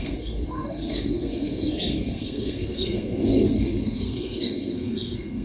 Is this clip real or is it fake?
fake